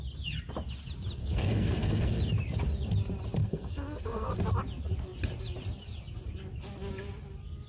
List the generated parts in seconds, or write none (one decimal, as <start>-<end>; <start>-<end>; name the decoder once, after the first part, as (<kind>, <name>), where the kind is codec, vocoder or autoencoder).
1.2-2.2 (codec, SNAC); 3.4-4.3